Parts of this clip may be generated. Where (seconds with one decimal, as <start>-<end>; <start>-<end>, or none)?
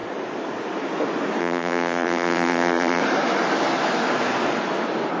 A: 1.4-3.0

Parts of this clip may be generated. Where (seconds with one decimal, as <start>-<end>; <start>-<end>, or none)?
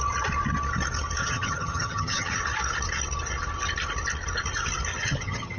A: 1.2-2.4; 4.9-5.6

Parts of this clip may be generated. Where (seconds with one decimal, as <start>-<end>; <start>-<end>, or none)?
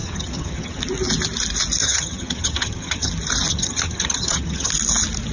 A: 0.0-0.8; 1.8-3.1; 3.5-4.7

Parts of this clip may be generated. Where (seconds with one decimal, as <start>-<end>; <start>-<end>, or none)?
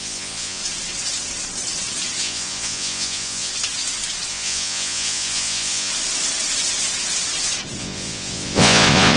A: 0.0-0.6; 2.2-3.5; 4.3-5.9; 7.8-9.2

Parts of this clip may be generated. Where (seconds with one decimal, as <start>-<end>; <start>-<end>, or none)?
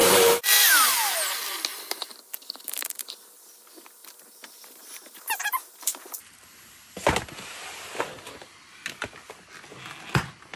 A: 0.0-1.1; 4.0-6.3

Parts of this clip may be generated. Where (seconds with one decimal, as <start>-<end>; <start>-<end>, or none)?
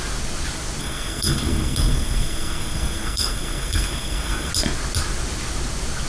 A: 0.8-4.5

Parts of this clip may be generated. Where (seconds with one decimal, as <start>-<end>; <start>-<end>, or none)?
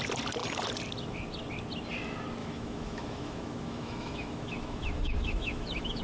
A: 2.4-6.0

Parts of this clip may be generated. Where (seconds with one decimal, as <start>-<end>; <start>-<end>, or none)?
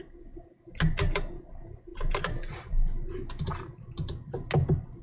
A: none